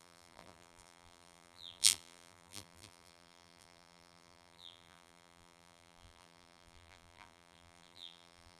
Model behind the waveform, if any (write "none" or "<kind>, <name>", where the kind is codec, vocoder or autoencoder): vocoder, BigVGAN v2